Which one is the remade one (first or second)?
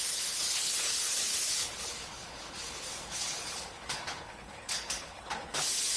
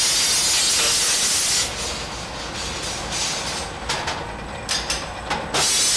first